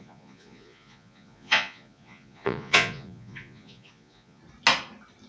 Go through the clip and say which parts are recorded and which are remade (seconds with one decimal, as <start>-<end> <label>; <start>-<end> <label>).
0.0-4.4 remade; 4.4-5.3 recorded